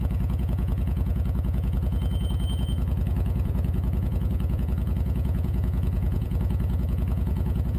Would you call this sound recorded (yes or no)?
no